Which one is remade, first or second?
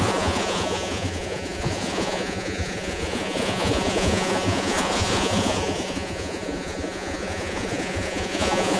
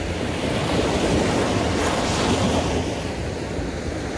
first